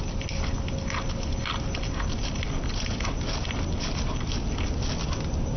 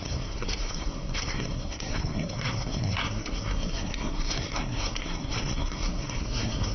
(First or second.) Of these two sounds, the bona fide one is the first